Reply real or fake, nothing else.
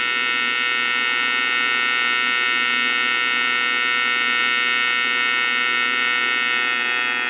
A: real